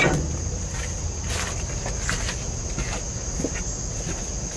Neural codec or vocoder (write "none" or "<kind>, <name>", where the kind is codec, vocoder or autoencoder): none